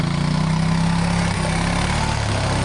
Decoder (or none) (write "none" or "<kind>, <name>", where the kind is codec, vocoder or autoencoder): none